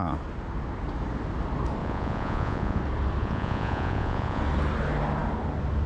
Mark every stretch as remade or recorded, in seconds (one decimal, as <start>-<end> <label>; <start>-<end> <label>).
0.0-1.8 recorded; 1.8-2.8 remade; 2.8-3.2 recorded; 3.2-4.4 remade; 4.4-5.9 recorded